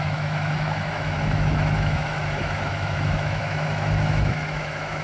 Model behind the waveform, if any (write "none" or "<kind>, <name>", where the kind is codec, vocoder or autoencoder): autoencoder, DAC-VAE